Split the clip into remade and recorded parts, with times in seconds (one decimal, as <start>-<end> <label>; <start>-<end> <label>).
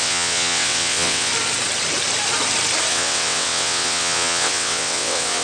0.0-1.3 remade; 1.3-2.9 recorded; 2.9-5.4 remade